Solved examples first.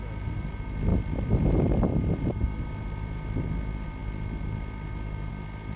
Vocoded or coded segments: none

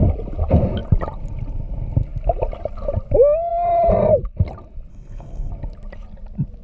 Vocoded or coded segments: 4.9-5.5

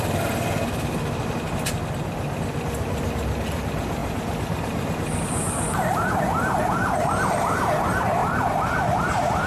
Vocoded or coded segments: none